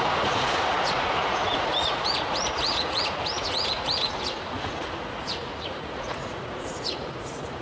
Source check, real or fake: fake